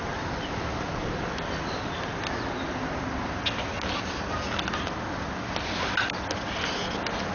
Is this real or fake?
real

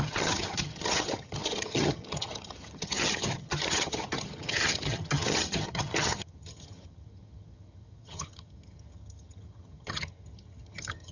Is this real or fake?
fake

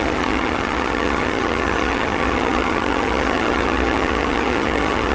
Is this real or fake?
fake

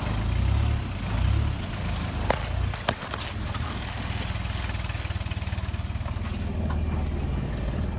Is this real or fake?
real